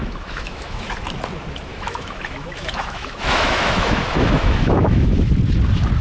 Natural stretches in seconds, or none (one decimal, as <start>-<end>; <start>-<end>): 0.9-1.7; 5.3-6.0